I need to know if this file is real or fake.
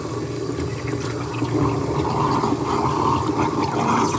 real